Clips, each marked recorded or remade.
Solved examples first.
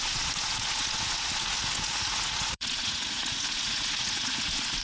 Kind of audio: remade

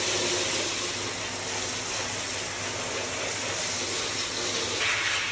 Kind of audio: recorded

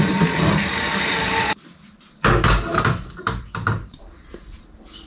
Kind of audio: remade